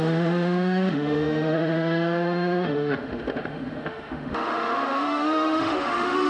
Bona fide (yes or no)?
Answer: no